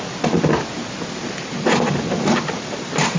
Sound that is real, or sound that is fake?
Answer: real